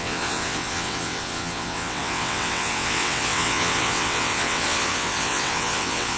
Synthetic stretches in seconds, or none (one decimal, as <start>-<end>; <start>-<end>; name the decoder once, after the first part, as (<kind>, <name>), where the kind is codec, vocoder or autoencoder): 0.0-6.2 (vocoder, WaveNeXt)